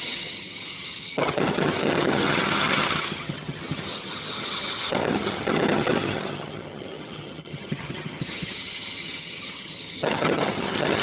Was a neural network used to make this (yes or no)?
yes